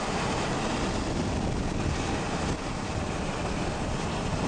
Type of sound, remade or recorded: recorded